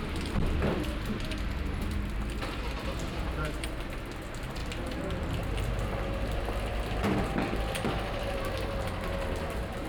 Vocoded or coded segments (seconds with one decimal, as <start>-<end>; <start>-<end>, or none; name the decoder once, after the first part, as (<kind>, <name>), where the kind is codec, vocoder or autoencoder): none